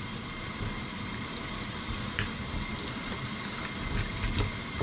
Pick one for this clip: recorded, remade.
remade